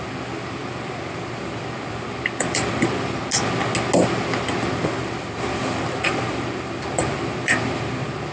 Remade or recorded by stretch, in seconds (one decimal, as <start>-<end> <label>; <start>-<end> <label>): 0.0-3.2 remade; 3.2-4.6 recorded; 4.6-8.3 remade